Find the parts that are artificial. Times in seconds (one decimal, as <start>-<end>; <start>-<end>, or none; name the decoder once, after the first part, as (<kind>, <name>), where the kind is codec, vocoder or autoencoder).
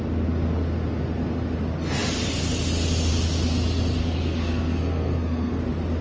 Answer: 4.0-5.6 (codec, SNAC)